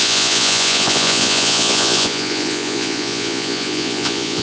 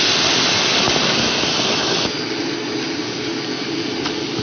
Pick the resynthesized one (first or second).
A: first